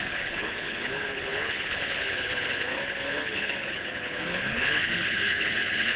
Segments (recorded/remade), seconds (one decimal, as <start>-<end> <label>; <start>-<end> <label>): 0.0-6.0 remade